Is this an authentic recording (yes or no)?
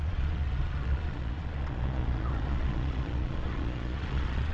no